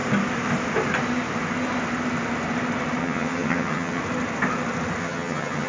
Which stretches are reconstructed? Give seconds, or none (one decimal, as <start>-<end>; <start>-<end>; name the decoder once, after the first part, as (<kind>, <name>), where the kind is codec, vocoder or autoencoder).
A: 3.0-4.0 (vocoder, HiFi-GAN); 5.0-5.7